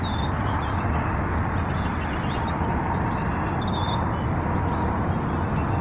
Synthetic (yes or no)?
no